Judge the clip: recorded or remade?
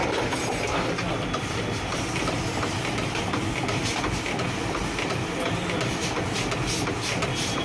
recorded